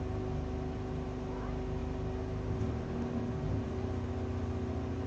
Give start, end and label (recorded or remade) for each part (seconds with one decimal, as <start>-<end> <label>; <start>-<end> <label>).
0.0-5.1 recorded